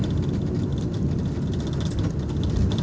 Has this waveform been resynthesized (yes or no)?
no